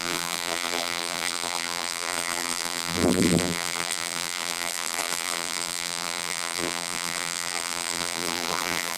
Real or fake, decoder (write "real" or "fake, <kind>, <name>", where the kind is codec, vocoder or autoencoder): fake, vocoder, BigVGAN v2